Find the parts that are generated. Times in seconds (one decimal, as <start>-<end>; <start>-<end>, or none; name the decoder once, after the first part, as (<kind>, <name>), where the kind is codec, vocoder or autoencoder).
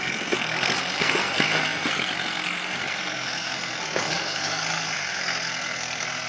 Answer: 0.0-6.3 (codec, SNAC)